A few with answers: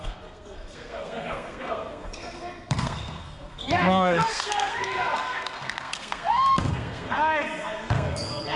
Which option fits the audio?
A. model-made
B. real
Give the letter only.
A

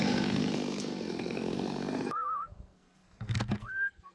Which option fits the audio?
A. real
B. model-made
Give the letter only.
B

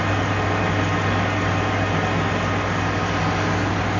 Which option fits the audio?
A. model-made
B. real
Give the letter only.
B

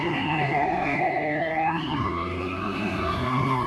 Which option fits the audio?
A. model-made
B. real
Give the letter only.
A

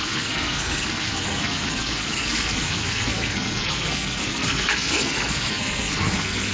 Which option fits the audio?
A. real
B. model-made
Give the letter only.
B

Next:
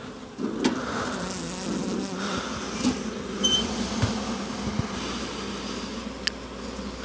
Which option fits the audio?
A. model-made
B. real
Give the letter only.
B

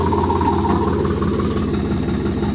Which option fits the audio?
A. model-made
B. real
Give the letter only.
B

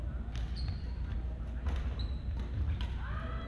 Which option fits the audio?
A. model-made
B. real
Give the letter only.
B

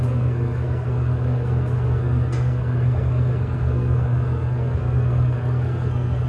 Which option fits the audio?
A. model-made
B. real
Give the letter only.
A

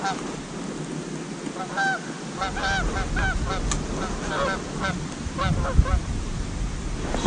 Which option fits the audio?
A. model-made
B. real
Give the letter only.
B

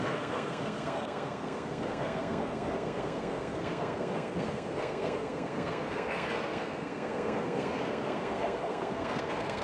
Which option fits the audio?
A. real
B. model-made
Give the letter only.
B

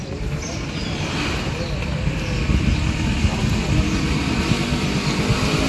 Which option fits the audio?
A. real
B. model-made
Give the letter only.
A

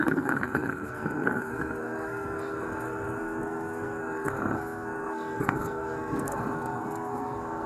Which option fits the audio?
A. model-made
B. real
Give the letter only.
A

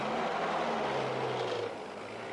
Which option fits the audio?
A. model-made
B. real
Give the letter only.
B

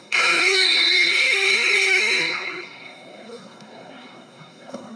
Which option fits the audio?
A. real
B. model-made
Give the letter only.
B